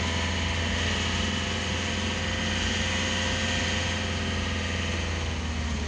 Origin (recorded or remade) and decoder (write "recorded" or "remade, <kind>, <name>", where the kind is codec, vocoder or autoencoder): recorded